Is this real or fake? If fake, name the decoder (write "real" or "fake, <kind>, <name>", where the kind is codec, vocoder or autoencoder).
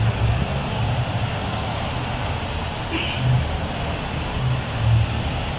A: real